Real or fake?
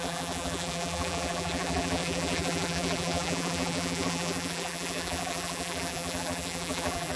fake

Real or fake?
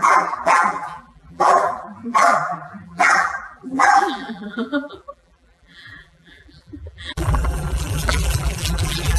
fake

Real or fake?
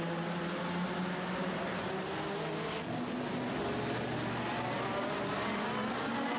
real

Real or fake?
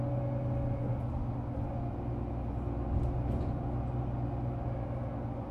real